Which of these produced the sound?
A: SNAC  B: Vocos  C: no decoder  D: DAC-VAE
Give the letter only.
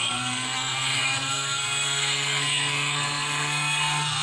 A